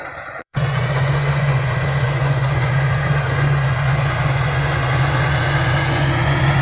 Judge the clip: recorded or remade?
remade